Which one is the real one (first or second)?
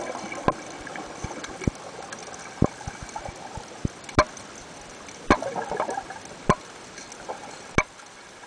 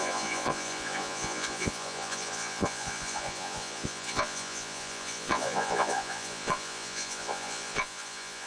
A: first